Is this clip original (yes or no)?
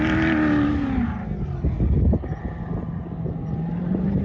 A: yes